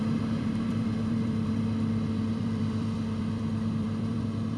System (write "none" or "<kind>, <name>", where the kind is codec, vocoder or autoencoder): vocoder, BigVGAN v2